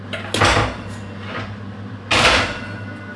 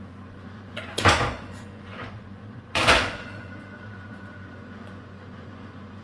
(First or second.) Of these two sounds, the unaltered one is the first